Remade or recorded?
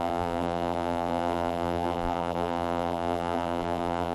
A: remade